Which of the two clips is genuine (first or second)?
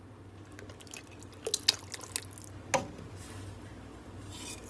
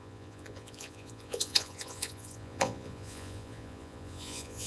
first